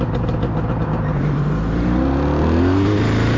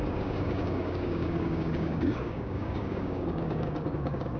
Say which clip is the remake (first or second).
second